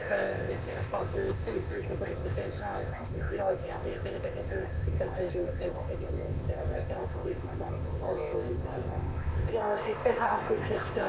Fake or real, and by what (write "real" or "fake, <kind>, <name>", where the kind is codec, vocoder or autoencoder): fake, codec, ZipCodec